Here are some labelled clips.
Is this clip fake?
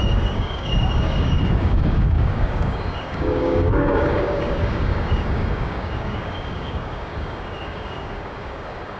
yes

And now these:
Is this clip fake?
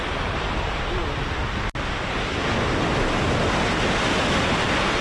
no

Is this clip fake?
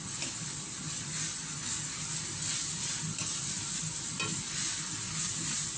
no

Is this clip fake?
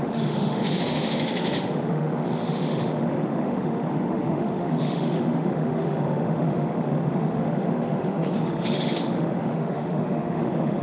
yes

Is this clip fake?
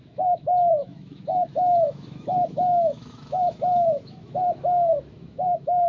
yes